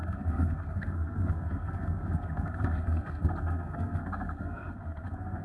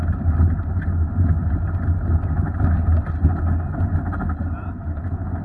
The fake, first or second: first